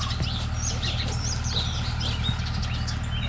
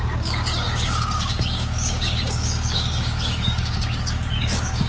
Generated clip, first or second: second